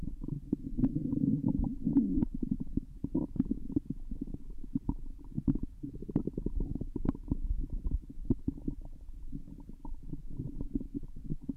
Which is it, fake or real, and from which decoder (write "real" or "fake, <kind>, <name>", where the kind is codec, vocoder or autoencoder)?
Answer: real